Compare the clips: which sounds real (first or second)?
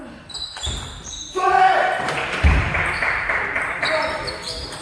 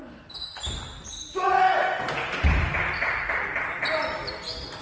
second